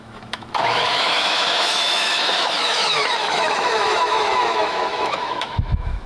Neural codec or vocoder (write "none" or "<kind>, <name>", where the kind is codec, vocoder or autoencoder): autoencoder, DAC-VAE